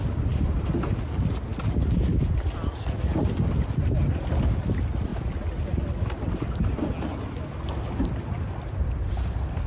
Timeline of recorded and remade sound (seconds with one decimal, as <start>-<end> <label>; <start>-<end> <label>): 0.0-9.7 recorded